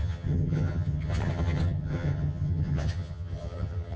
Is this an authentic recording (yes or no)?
no